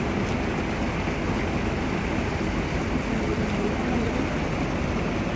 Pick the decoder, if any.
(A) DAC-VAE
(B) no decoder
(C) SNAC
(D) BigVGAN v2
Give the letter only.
B